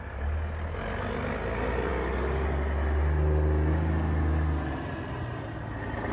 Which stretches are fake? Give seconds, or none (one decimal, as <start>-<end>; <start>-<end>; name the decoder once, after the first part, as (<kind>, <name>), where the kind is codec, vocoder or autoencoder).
none